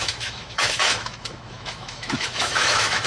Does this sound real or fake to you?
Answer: fake